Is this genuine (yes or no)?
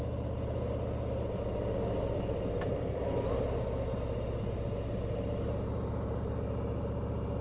yes